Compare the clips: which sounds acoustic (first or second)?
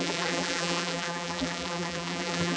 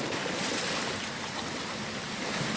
second